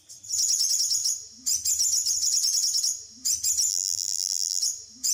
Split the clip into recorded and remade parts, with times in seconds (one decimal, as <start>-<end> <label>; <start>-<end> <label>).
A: 0.0-3.7 recorded; 3.7-4.6 remade; 4.6-5.1 recorded